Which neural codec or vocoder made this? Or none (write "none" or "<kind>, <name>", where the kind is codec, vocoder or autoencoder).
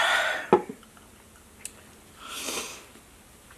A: none